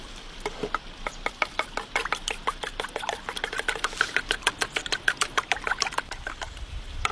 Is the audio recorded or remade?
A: remade